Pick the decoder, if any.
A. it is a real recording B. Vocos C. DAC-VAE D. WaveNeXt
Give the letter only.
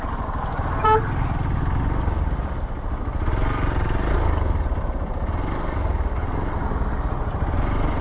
A